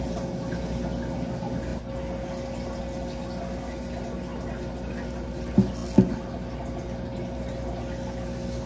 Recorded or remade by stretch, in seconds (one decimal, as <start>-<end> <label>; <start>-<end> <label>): 0.0-8.7 recorded